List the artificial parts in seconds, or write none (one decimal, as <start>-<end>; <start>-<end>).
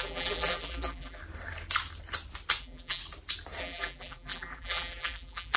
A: 0.0-1.2; 2.6-3.0; 3.6-5.6